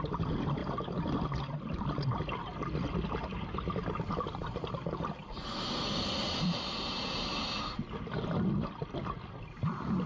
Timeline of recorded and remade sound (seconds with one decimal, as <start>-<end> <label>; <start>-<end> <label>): 0.0-10.1 recorded